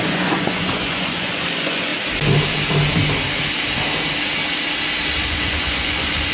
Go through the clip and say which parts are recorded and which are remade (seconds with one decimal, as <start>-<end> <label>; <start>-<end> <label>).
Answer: 0.0-1.9 remade; 1.9-5.2 recorded; 5.2-6.3 remade